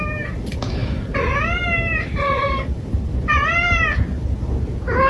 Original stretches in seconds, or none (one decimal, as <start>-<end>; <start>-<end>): 0.0-0.8; 3.9-5.1